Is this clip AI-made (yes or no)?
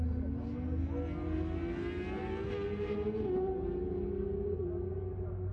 no